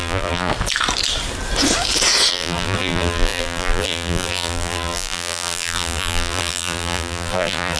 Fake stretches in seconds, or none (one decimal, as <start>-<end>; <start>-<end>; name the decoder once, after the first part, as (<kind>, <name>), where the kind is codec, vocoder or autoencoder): 0.0-0.5 (vocoder, BigVGAN v2); 2.3-7.8